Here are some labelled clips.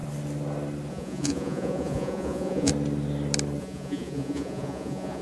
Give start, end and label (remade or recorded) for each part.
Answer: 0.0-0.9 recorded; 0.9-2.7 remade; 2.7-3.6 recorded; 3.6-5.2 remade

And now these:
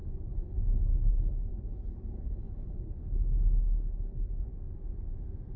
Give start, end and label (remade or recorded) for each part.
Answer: 0.0-4.5 remade; 4.5-5.6 recorded

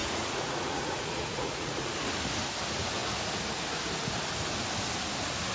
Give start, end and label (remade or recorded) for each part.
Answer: 0.0-1.9 remade; 1.9-5.5 recorded

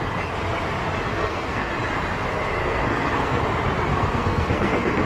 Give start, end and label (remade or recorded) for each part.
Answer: 0.0-1.1 recorded; 1.1-1.7 remade; 1.7-2.6 recorded; 2.6-3.4 remade; 3.4-3.9 recorded; 3.9-5.1 remade

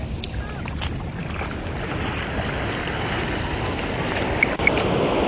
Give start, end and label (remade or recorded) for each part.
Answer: 0.0-5.3 recorded

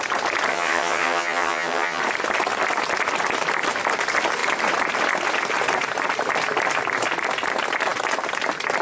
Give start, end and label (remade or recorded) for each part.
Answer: 0.0-0.5 recorded; 0.5-2.0 remade; 2.0-8.8 recorded